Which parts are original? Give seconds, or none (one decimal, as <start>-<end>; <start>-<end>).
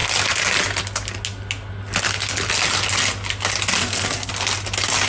0.0-3.8; 4.3-5.1